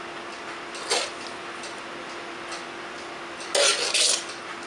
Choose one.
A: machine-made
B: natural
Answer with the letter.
B